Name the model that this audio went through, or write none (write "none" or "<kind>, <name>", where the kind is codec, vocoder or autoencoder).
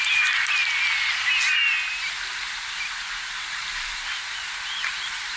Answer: none